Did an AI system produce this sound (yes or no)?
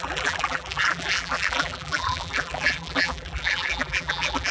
yes